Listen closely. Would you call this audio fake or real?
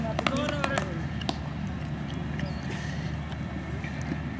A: real